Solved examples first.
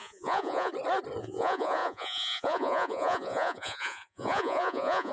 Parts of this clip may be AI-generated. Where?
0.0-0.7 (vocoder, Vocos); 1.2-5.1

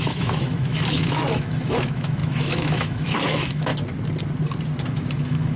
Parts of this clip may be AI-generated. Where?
0.0-3.7 (autoencoder, DAC-VAE); 4.8-5.6

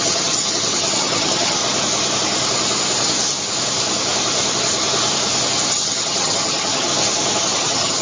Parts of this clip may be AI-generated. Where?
0.0-1.6 (vocoder, HiFi-GAN); 5.7-6.9; 7.4-8.0

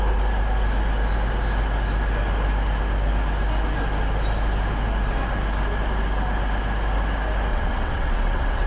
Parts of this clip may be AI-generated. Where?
7.5-8.7 (vocoder, WaveNeXt)